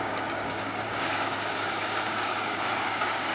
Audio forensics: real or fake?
fake